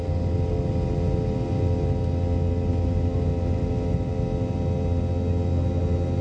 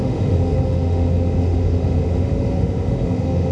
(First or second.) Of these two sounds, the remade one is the second